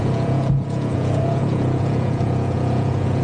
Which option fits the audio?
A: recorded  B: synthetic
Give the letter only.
B